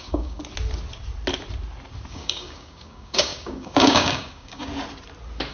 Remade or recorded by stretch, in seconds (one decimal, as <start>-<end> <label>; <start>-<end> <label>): 0.0-0.4 remade; 0.4-2.1 recorded; 2.1-4.7 remade; 4.7-5.5 recorded